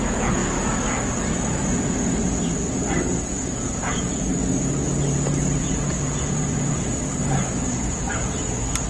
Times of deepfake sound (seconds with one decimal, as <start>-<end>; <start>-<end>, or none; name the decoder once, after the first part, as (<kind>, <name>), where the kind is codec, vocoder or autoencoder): 0.0-0.4 (vocoder, Vocos); 3.2-4.3; 5.6-6.9